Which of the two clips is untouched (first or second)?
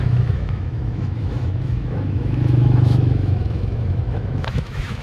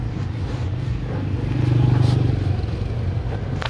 second